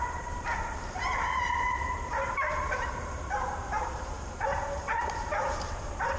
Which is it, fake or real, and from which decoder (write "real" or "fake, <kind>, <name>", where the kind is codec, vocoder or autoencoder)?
fake, vocoder, BigVGAN v2